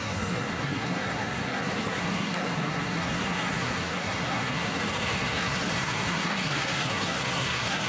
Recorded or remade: remade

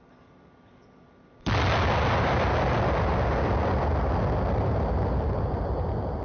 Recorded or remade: recorded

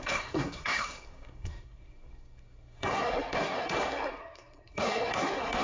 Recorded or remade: remade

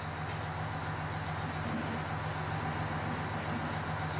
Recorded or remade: recorded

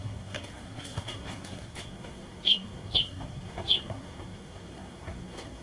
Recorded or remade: remade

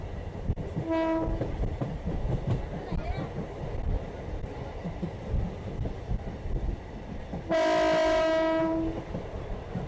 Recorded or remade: recorded